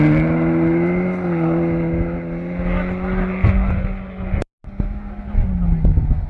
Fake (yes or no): no